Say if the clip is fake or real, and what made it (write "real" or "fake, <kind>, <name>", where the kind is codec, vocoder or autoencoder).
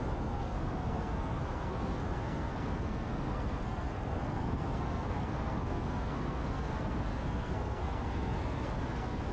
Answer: fake, codec, SNAC